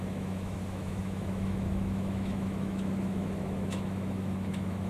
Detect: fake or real fake